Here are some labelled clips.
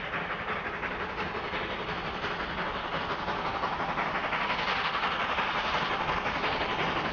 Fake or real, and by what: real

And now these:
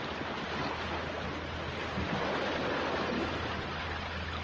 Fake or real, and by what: real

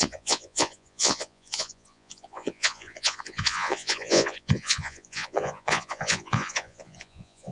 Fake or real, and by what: fake, vocoder, Vocos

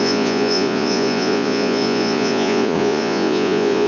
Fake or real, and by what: fake, vocoder, Vocos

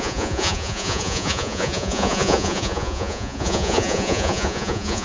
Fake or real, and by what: fake, vocoder, Vocos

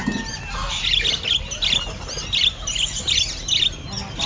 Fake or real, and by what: real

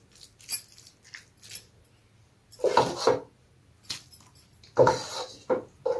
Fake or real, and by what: real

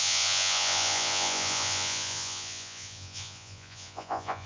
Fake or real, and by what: fake, vocoder, Vocos